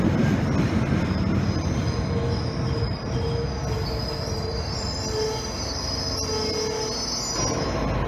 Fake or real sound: real